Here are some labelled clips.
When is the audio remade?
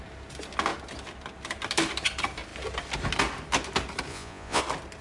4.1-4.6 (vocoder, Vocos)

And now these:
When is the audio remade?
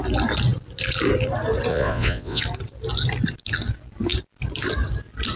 1.7-2.4 (vocoder, Vocos)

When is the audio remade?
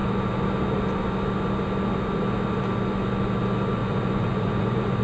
3.8-5.0 (vocoder, Vocos)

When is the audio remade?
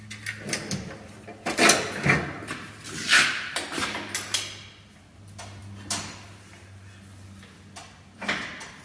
none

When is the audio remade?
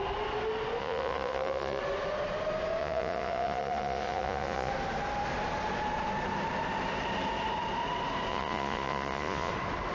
0.8-1.8 (vocoder, Vocos); 2.8-4.7; 8.3-9.5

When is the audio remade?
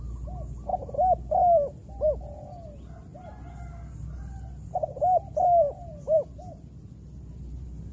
none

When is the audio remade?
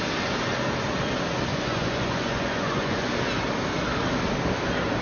1.5-3.1 (vocoder, Vocos)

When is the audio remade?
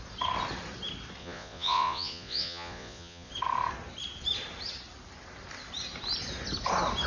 1.2-3.3 (vocoder, Vocos)